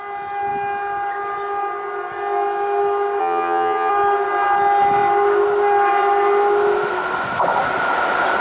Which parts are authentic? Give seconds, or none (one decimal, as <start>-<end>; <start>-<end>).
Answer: 0.0-3.2; 3.9-8.4